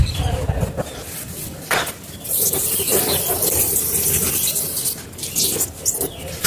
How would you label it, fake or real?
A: fake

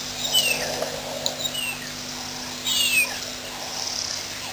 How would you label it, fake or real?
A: real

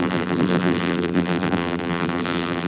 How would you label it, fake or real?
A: fake